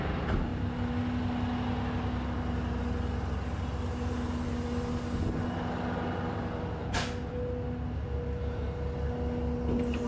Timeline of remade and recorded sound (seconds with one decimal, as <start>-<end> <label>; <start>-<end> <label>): 0.0-10.1 recorded